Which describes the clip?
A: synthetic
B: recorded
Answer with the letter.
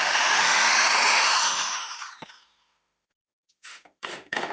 A